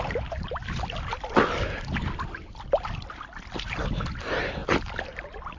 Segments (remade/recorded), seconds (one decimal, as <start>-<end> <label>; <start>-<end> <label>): 0.0-4.6 recorded; 4.6-5.6 remade